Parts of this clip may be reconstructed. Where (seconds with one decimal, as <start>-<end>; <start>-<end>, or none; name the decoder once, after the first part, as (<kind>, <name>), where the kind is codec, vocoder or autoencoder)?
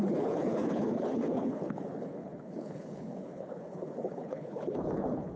0.0-5.4 (codec, HILCodec)